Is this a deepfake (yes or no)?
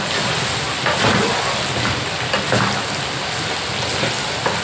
no